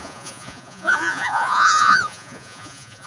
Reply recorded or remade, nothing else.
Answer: remade